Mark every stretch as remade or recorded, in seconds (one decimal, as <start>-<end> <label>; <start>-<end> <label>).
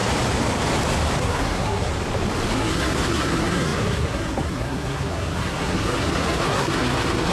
0.0-1.2 recorded; 1.2-1.9 remade; 1.9-2.5 recorded; 2.5-7.3 remade